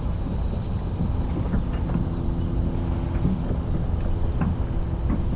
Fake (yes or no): no